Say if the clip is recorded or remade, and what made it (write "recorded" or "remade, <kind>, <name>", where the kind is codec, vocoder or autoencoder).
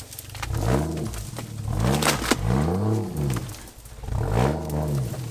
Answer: recorded